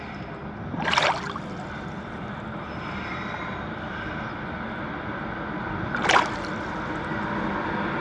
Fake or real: real